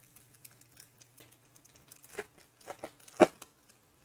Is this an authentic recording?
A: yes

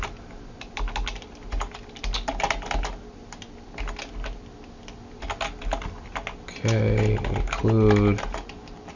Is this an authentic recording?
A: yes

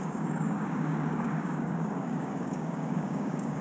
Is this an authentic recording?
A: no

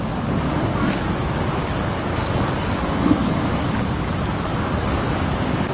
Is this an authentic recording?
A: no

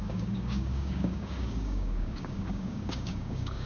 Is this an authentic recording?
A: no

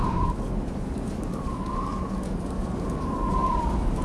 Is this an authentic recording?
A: no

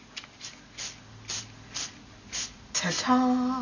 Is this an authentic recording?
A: yes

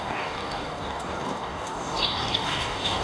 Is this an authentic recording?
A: no